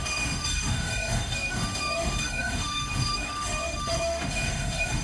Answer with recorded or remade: remade